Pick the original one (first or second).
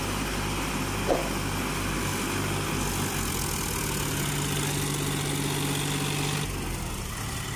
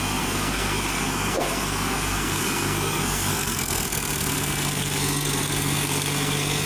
first